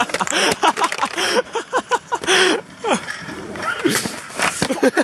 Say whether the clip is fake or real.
fake